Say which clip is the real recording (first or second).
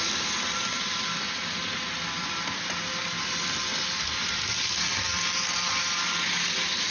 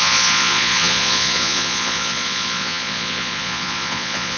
first